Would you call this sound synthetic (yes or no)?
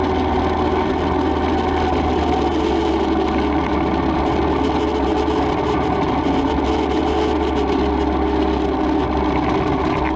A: no